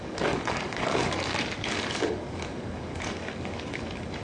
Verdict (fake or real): fake